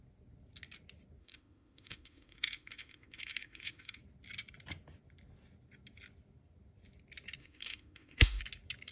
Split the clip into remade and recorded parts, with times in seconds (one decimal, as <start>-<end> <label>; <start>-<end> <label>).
0.0-1.2 recorded; 1.2-4.0 remade; 4.0-7.4 recorded; 7.4-8.4 remade; 8.4-8.9 recorded